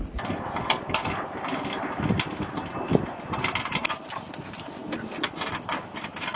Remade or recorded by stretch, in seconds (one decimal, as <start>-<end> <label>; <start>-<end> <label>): 0.0-6.4 recorded